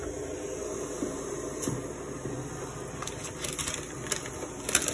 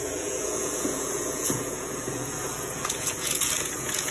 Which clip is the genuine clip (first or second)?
first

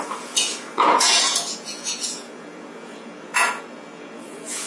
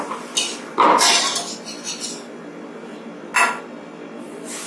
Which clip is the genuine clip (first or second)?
second